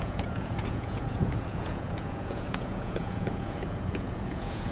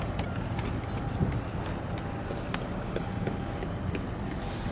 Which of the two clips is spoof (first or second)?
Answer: first